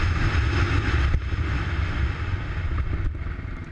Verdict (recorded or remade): recorded